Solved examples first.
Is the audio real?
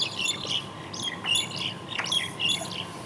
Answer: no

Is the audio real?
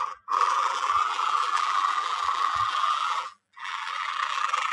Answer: no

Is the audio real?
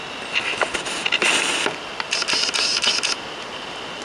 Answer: yes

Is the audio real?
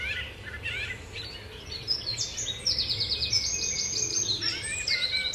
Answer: yes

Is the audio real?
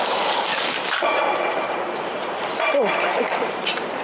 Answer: no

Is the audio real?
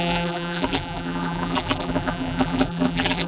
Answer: no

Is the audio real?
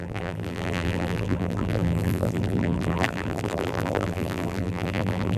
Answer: no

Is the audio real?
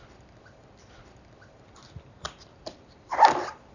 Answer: no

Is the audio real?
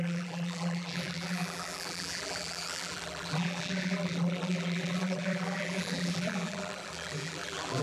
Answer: no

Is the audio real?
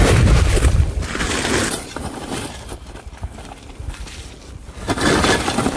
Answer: yes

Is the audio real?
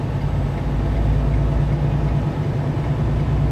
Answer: yes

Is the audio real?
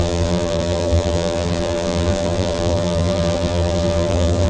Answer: no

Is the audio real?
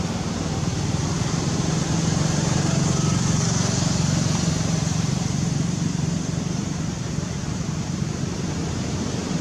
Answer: no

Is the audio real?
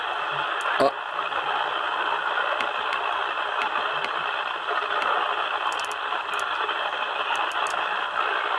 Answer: no